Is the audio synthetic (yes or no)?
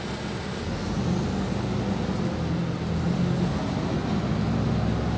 no